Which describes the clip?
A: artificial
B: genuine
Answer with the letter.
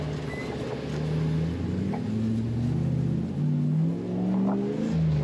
B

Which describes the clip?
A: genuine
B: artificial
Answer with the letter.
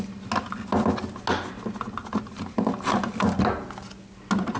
A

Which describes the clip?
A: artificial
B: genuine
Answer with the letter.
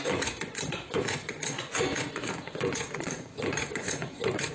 A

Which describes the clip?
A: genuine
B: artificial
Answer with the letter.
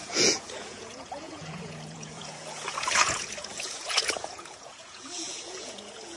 B